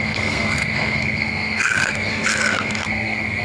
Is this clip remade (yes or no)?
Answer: yes